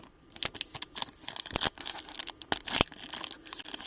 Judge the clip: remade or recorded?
recorded